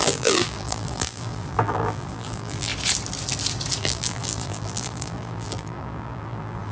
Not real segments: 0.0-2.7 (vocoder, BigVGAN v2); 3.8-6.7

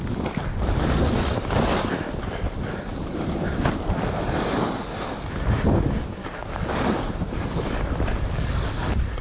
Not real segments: 2.9-3.6 (vocoder, BigVGAN v2); 6.2-8.2

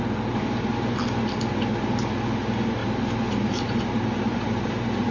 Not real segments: 2.8-5.1 (vocoder, BigVGAN v2)

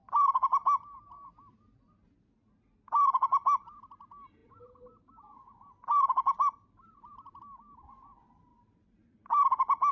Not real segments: 4.4-7.4 (vocoder, BigVGAN v2); 8.5-9.9

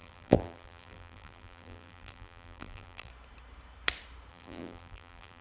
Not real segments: 0.0-3.1 (vocoder, BigVGAN v2); 4.3-5.4

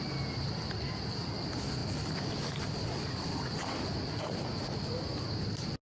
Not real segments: none

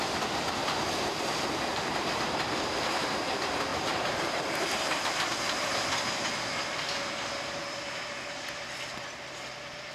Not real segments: 1.7-2.8 (vocoder, BigVGAN v2); 3.7-5.1